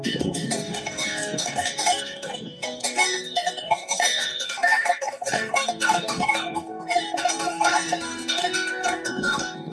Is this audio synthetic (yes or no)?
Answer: yes